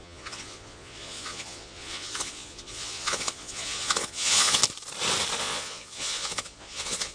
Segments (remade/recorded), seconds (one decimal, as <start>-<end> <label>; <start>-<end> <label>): 0.0-4.6 remade; 4.6-5.4 recorded; 5.4-7.1 remade